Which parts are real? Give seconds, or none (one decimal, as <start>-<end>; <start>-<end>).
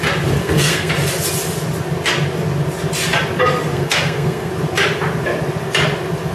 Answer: 0.0-0.4; 0.9-3.7; 4.5-6.3